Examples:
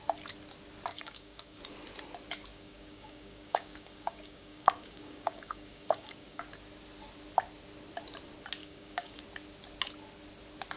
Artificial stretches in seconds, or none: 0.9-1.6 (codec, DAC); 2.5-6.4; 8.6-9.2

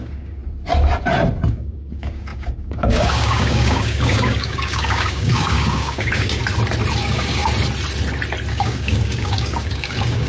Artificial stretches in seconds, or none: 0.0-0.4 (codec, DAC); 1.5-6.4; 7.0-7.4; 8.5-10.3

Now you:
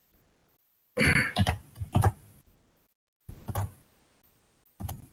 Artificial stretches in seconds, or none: none

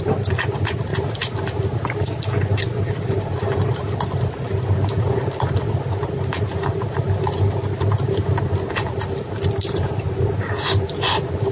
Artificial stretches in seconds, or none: none

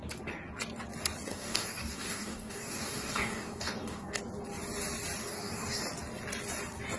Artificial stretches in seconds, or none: 1.3-4.2 (codec, DAC); 5.2-5.8

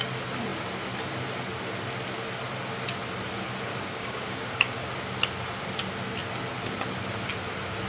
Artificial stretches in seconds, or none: 3.7-4.9 (codec, DAC)

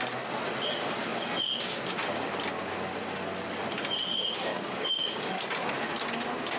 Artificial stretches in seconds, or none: 4.5-5.3 (codec, DAC)

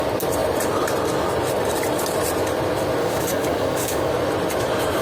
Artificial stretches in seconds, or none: 3.0-4.1 (codec, DAC)